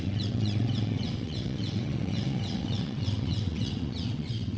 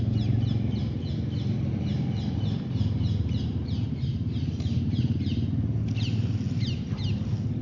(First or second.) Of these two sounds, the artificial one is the first